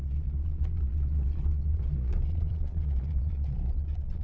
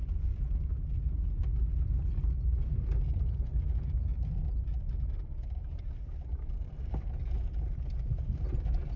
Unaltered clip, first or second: second